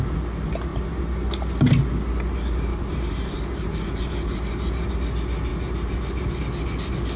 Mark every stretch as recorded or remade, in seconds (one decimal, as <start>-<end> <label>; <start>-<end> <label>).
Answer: 0.0-0.7 recorded; 0.7-1.7 remade; 1.7-2.7 recorded; 2.7-4.9 remade; 4.9-5.5 recorded; 5.5-6.4 remade; 6.4-7.2 recorded